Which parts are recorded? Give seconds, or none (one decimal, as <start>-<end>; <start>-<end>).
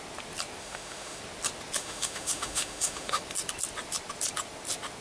0.0-0.6; 1.2-1.8; 3.2-5.0